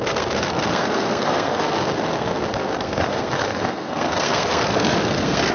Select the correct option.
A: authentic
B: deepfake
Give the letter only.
B